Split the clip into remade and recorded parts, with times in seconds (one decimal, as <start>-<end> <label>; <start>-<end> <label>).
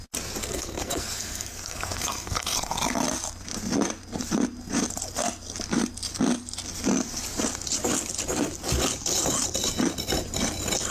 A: 0.0-0.4 recorded; 0.4-2.8 remade; 2.8-10.9 recorded